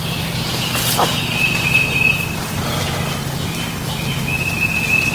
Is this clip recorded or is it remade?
recorded